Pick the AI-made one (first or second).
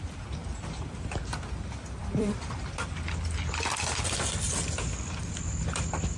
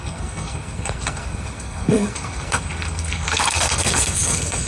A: second